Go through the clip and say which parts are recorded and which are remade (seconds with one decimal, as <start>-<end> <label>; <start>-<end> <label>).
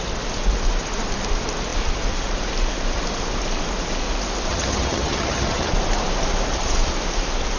0.0-4.5 recorded; 4.5-5.7 remade; 5.7-7.6 recorded